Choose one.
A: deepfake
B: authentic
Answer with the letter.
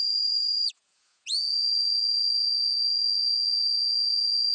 A